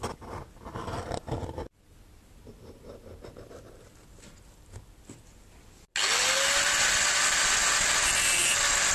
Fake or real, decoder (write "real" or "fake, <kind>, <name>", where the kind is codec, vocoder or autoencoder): real